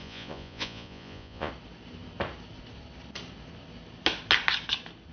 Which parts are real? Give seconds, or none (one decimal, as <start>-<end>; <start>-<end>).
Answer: 1.5-5.1